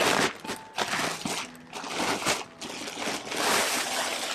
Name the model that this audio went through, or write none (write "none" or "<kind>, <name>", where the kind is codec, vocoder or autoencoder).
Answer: none